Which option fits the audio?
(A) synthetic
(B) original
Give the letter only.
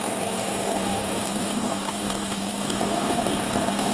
A